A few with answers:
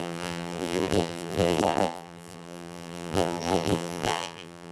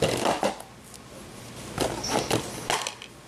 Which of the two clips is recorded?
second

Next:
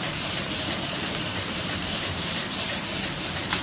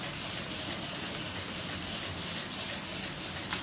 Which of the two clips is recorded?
second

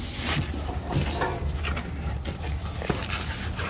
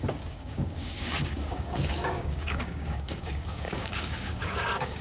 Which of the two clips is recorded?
first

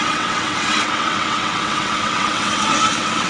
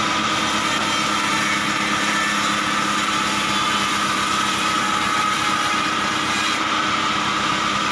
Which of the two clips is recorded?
second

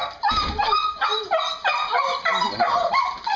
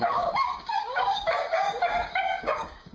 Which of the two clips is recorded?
first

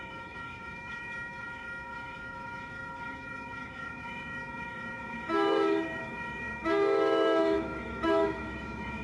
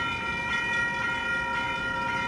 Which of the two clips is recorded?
second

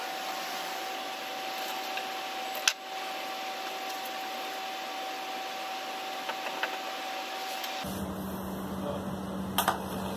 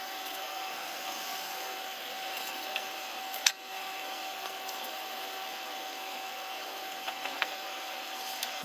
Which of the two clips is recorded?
first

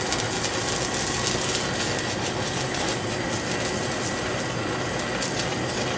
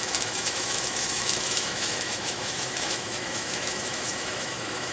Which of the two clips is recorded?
first